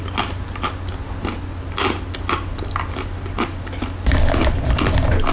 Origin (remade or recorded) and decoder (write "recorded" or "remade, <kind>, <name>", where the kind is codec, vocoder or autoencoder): recorded